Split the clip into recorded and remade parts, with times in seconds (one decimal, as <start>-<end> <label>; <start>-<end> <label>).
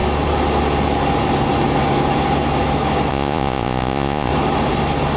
0.0-3.1 recorded; 3.1-4.3 remade; 4.3-5.2 recorded